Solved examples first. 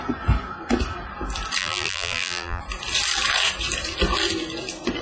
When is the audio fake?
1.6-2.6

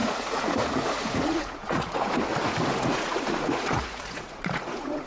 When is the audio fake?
0.0-2.2; 2.7-5.1

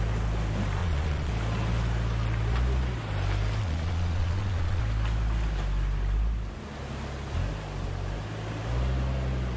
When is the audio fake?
0.8-1.3; 3.6-4.8

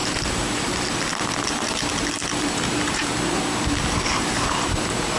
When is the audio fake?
2.4-3.1; 4.2-5.2

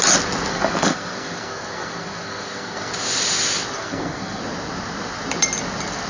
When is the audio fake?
0.5-2.9; 3.8-4.4